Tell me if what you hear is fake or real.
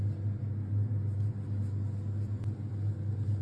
real